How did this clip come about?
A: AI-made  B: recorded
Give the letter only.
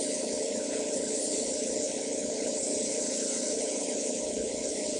A